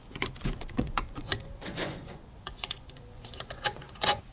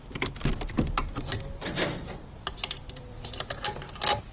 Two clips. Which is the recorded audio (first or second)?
second